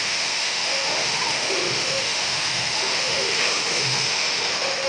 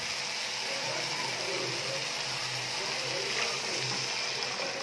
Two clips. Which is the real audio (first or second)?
second